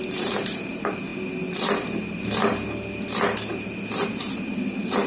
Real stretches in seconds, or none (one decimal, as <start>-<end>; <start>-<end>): 1.1-4.2